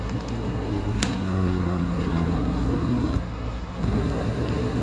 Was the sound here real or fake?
fake